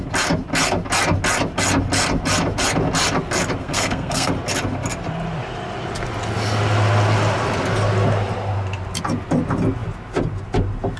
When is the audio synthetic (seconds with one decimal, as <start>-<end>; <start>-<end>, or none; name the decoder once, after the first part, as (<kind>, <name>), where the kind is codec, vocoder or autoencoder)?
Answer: 3.6-4.3 (codec, SNAC)